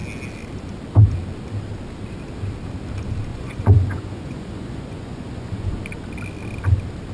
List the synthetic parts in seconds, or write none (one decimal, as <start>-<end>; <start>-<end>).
3.3-5.8